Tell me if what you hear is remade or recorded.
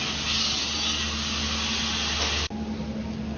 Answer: recorded